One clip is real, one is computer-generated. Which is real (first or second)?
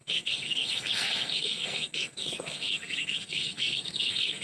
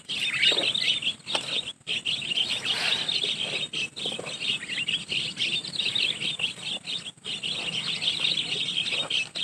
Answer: second